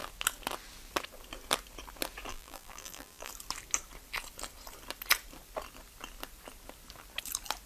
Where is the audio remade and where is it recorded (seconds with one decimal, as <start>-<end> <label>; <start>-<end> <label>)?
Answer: 0.0-2.3 recorded; 2.3-3.3 remade; 3.3-7.7 recorded

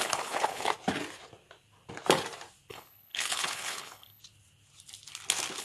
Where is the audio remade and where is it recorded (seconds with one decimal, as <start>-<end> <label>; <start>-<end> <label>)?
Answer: 0.0-0.7 remade; 0.7-2.7 recorded; 2.7-4.2 remade; 4.2-5.6 recorded

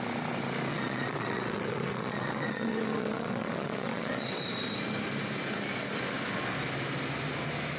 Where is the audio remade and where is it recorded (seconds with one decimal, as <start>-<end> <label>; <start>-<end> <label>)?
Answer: 0.0-0.7 recorded; 0.7-4.5 remade; 4.5-7.8 recorded

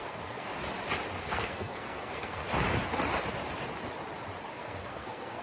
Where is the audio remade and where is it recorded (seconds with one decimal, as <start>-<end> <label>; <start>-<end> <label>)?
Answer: 0.0-0.5 remade; 0.5-1.2 recorded; 1.2-2.4 remade; 2.4-4.5 recorded; 4.5-5.4 remade